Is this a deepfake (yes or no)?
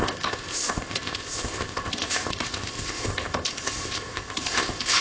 yes